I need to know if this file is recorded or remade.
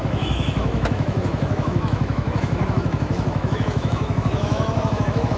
remade